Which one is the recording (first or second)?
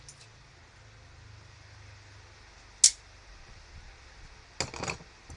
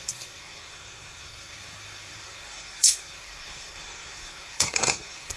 first